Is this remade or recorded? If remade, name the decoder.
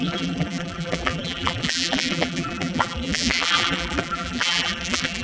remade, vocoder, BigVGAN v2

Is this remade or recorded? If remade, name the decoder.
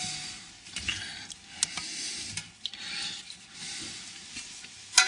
recorded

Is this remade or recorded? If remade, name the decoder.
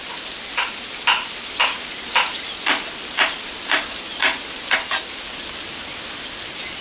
recorded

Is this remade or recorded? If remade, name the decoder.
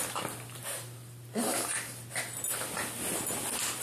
recorded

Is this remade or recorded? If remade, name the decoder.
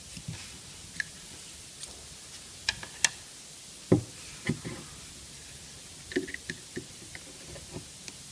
recorded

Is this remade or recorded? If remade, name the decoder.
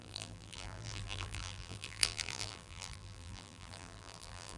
remade, vocoder, BigVGAN v2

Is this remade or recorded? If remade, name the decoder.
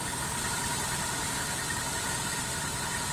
recorded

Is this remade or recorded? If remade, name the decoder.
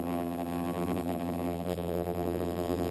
remade, vocoder, BigVGAN v2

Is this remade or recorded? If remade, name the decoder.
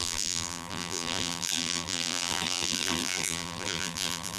remade, vocoder, BigVGAN v2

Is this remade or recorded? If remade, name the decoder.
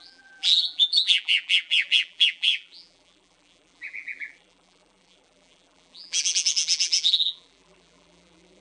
remade, vocoder, BigVGAN v2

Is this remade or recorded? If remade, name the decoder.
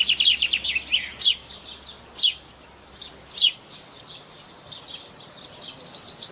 recorded